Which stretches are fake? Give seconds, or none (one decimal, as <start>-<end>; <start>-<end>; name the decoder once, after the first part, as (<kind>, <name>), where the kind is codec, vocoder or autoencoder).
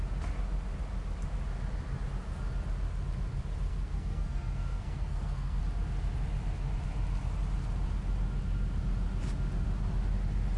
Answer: 3.7-5.6 (codec, SNAC)